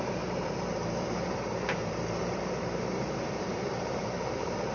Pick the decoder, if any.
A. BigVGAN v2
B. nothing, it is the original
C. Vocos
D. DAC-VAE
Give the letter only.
A